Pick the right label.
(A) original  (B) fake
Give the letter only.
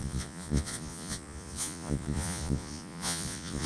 B